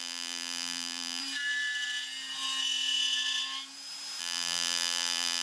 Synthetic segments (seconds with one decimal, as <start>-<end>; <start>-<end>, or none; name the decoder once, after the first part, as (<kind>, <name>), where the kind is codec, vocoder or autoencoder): 0.0-1.2 (vocoder, BigVGAN v2); 4.2-5.4